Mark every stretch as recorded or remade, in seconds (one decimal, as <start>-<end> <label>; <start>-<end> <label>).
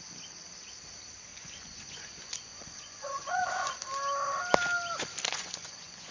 0.0-1.3 recorded; 1.3-3.7 remade; 3.7-5.3 recorded; 5.3-6.1 remade